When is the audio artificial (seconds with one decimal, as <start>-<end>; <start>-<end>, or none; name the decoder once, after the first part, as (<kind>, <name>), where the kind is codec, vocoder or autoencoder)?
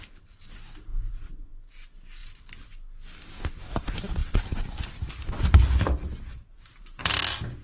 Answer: 6.5-7.1 (vocoder, BigVGAN v2)